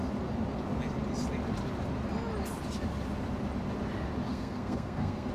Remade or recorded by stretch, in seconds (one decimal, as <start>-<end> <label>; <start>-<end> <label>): 0.0-4.3 recorded; 4.3-5.3 remade